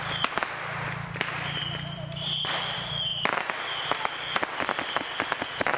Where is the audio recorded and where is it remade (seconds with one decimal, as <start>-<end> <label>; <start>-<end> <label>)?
0.0-5.8 recorded